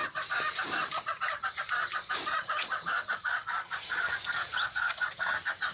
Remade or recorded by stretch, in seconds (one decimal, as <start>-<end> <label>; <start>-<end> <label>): 0.0-2.4 recorded; 2.4-4.0 remade; 4.0-4.4 recorded; 4.4-5.3 remade; 5.3-5.7 recorded